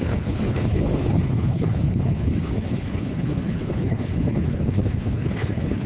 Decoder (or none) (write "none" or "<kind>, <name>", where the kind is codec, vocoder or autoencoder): codec, HILCodec